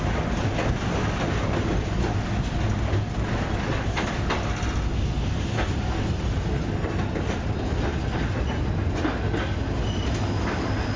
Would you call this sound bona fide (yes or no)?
yes